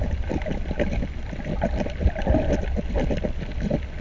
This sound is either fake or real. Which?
real